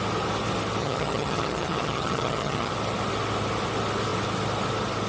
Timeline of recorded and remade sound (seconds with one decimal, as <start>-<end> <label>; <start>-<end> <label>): 0.0-0.8 recorded; 0.8-2.7 remade; 2.7-5.1 recorded